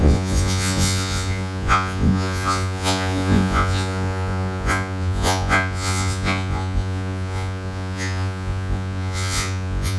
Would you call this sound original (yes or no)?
no